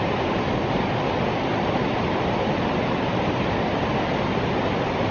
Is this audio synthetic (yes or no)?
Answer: no